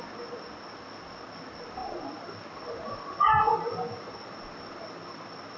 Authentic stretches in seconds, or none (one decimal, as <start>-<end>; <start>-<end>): 0.0-5.6